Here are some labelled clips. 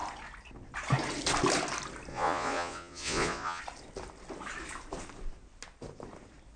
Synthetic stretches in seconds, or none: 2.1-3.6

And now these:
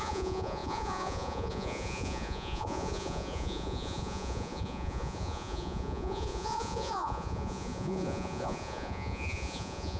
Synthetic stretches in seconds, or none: 0.0-10.0

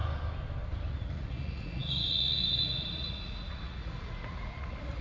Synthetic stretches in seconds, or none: 0.9-5.0

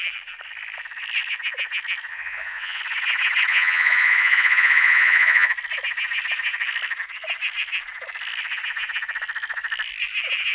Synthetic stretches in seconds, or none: 2.1-2.8; 3.5-5.5